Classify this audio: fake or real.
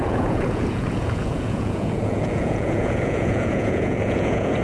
fake